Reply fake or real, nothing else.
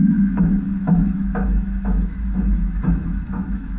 fake